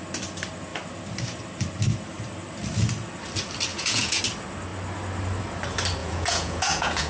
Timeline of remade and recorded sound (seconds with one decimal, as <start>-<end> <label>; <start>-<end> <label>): 0.0-3.7 recorded; 3.7-4.2 remade; 4.2-6.0 recorded; 6.0-7.1 remade